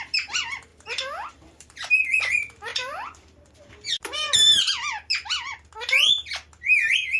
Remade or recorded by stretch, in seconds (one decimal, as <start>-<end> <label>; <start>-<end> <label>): 0.0-4.4 remade; 4.4-6.6 recorded; 6.6-7.2 remade